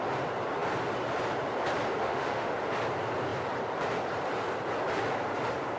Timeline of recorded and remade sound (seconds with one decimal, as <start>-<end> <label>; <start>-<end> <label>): 0.0-2.0 recorded; 2.0-2.5 remade; 2.5-5.8 recorded